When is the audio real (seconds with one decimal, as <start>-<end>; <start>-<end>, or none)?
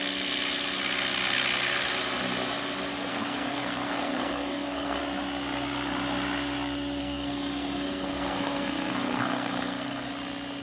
0.0-3.1; 5.0-7.0; 10.1-10.6